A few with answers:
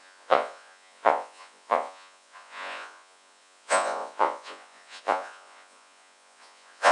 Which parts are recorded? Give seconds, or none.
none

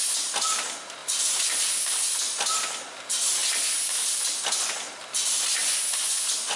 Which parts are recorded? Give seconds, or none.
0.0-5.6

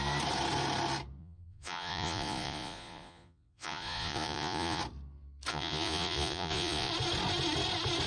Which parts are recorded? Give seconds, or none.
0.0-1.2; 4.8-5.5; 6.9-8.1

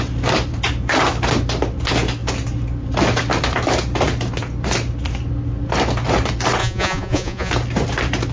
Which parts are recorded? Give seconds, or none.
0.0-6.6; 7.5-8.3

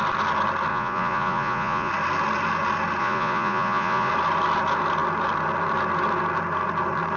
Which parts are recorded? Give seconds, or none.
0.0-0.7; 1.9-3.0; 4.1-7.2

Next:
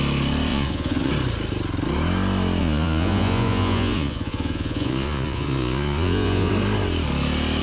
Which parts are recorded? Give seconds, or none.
0.0-0.5; 1.1-2.6; 6.5-7.6